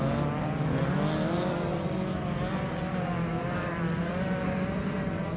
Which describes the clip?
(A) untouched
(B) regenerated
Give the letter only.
A